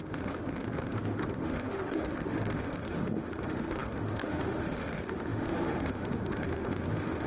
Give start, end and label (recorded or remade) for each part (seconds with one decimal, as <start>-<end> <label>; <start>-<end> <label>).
0.0-7.3 remade

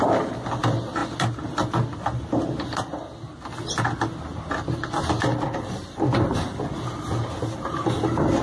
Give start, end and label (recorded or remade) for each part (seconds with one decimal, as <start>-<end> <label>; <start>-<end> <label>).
0.0-8.4 recorded

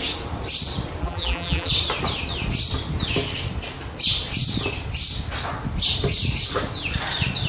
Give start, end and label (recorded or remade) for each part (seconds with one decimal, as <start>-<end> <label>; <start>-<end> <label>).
0.0-1.0 recorded; 1.0-1.7 remade; 1.7-7.5 recorded

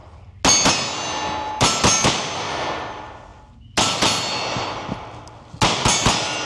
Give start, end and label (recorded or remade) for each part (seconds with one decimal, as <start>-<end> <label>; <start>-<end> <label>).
0.0-6.5 recorded

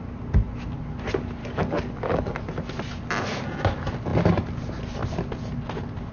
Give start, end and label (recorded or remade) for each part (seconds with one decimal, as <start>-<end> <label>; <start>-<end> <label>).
0.0-1.4 recorded; 1.4-2.3 remade; 2.3-6.1 recorded